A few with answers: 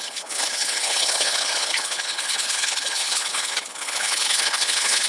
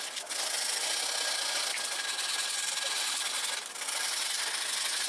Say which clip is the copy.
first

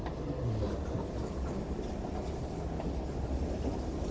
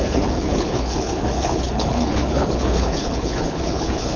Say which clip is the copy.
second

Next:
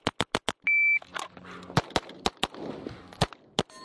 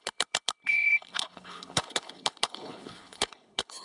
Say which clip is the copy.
second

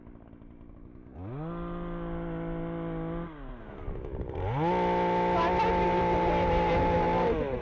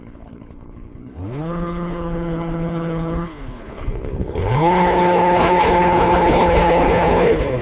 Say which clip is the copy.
second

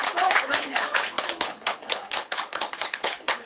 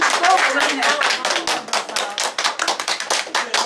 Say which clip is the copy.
first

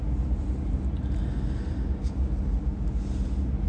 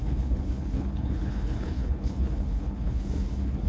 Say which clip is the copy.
second